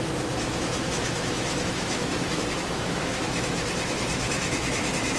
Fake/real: fake